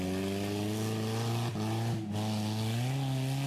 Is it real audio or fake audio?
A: real